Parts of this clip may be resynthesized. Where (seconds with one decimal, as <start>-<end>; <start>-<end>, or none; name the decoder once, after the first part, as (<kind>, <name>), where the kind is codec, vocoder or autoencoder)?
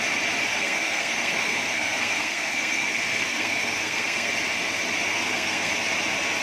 0.5-4.3 (codec, SNAC); 5.1-5.7